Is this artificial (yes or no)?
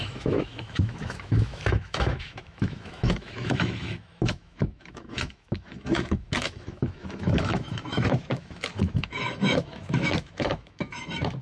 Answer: yes